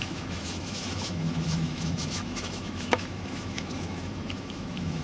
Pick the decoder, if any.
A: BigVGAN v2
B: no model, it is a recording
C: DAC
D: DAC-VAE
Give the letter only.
D